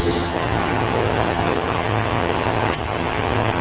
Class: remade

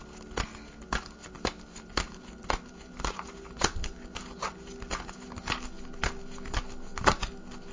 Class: recorded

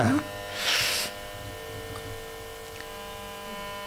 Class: recorded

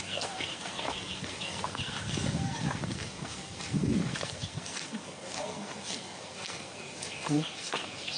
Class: remade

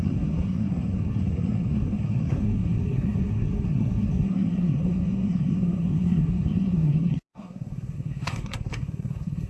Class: remade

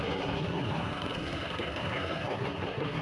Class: remade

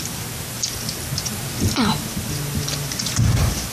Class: recorded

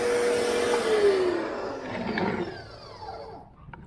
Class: recorded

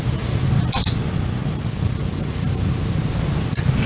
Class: recorded